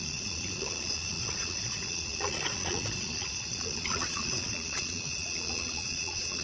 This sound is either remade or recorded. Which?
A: remade